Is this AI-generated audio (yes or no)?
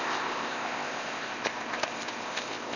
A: yes